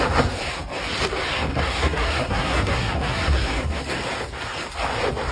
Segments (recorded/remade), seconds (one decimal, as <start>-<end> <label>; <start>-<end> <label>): 0.0-1.5 recorded; 1.5-3.8 remade; 3.8-5.3 recorded